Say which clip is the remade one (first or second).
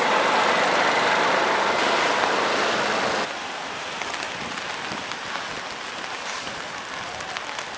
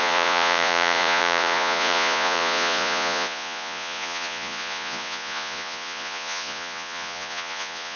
second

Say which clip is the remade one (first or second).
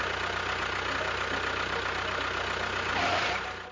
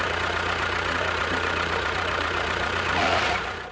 second